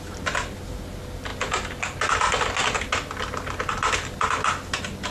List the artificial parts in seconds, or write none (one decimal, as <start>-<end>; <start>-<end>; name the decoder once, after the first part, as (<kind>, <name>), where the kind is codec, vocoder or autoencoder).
none